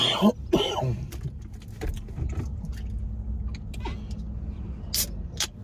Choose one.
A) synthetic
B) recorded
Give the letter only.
B